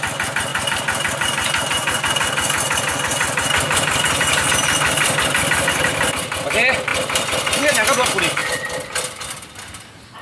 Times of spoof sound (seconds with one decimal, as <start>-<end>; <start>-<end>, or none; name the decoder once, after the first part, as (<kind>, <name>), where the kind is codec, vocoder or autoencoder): none